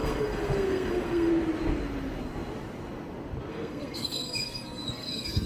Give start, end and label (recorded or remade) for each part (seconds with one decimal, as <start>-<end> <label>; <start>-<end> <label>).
0.0-1.3 remade; 1.3-3.5 recorded; 3.5-5.5 remade